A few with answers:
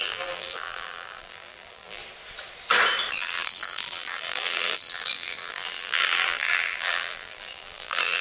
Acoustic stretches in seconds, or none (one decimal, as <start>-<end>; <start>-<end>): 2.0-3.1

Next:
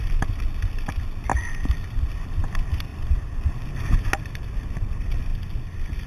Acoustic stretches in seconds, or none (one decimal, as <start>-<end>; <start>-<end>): 0.0-6.1

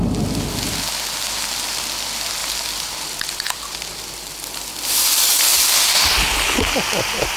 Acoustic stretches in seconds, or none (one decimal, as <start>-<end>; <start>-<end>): 0.0-2.4; 4.7-7.4